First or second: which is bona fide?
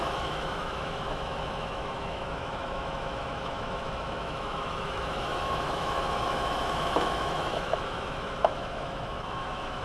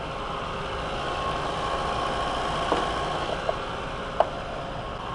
second